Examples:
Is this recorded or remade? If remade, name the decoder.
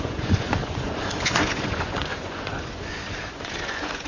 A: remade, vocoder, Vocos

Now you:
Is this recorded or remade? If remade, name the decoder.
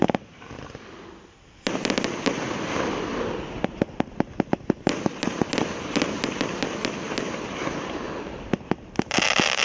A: recorded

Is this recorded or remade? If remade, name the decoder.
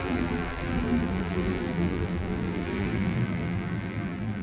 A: remade, vocoder, BigVGAN v2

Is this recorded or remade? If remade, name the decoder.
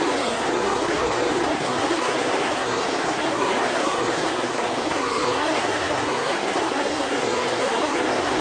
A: remade, codec, SNAC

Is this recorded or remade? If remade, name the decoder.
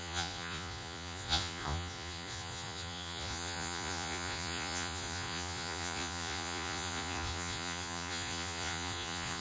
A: remade, vocoder, Vocos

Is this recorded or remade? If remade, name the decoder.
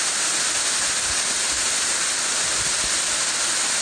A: recorded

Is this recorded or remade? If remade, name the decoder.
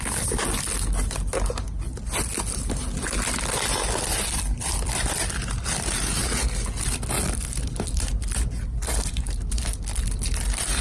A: recorded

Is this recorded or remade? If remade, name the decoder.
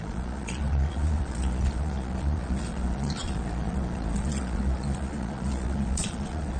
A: remade, vocoder, Vocos